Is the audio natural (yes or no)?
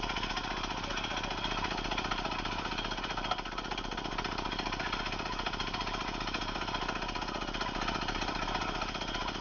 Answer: yes